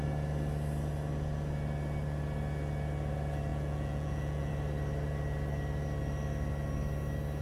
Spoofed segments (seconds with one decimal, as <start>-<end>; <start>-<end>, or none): 3.5-4.5